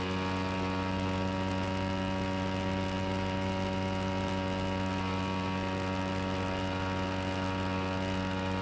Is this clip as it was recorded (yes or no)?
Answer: yes